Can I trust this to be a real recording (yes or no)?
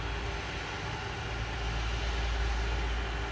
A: yes